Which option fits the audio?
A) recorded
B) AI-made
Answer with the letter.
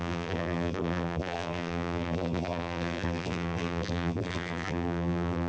B